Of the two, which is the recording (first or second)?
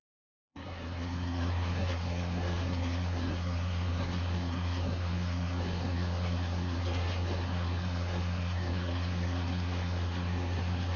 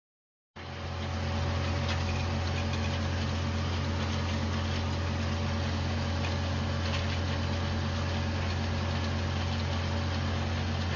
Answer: second